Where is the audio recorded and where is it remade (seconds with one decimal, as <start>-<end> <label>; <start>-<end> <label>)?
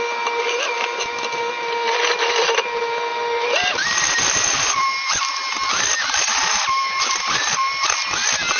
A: 0.0-8.6 recorded